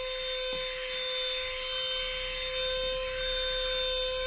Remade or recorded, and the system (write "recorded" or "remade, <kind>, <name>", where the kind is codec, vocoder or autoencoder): recorded